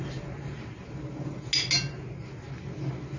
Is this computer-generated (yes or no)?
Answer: no